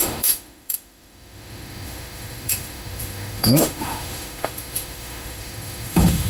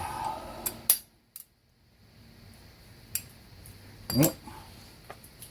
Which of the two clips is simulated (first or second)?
first